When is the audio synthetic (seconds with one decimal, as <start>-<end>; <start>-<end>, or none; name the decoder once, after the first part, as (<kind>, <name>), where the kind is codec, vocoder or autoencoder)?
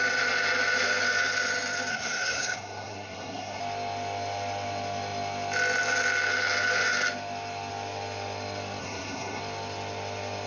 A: 1.9-3.6 (codec, SNAC); 8.8-9.4